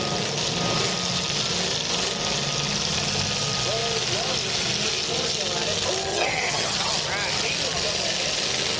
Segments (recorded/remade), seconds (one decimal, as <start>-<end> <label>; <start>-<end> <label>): 0.0-6.1 recorded; 6.1-6.9 remade; 6.9-8.8 recorded